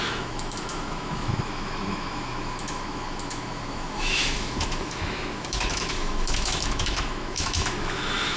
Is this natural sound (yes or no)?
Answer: no